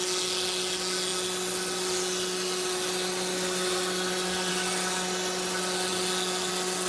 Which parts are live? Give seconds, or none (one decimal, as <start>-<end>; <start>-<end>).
0.0-6.9